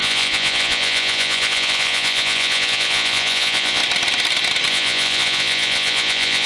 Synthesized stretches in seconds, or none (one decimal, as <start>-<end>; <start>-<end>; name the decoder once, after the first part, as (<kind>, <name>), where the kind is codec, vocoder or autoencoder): 0.0-3.8 (vocoder, Vocos); 4.7-6.5